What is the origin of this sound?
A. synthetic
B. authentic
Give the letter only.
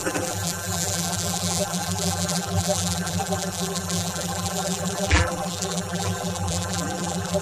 A